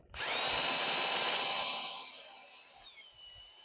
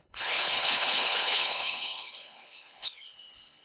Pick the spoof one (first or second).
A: second